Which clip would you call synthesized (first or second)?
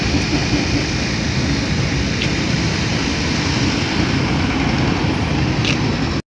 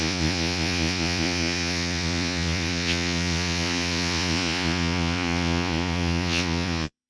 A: second